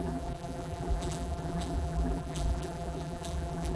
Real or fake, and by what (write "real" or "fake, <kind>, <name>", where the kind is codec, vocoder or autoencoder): fake, vocoder, BigVGAN v2